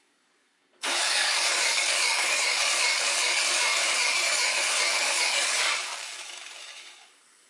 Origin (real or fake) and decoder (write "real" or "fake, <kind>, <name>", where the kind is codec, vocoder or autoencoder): fake, codec, DAC